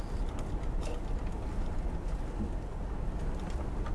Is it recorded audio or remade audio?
recorded